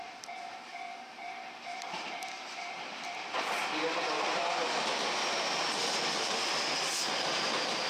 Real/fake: real